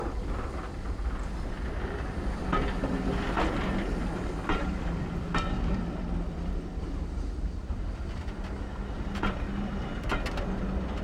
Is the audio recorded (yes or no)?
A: yes